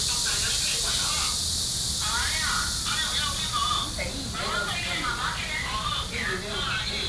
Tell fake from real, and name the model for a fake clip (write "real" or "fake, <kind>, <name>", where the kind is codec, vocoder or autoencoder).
real